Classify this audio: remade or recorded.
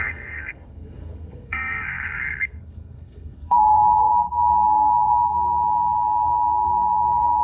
remade